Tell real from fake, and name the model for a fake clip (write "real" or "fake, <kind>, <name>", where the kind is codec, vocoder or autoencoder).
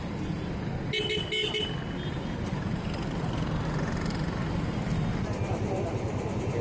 real